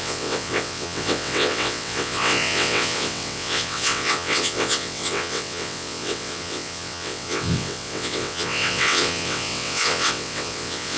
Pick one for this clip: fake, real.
fake